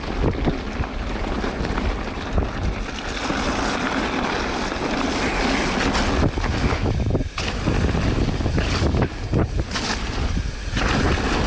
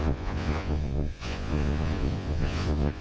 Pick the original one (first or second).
first